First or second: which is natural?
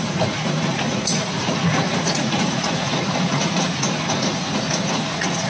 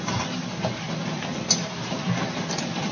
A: second